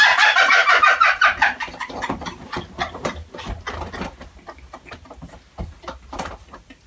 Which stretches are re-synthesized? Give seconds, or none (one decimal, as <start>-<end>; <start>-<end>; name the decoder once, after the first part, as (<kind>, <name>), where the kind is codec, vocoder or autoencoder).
none